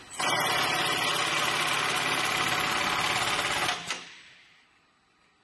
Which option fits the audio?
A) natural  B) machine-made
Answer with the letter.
A